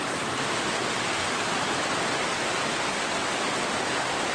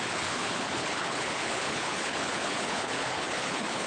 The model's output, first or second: second